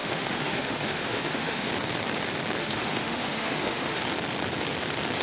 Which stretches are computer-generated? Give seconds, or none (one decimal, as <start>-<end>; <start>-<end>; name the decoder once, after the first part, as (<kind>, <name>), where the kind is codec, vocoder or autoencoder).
0.0-1.7 (autoencoder, DAC-VAE); 2.6-4.0